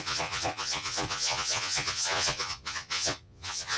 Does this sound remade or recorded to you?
remade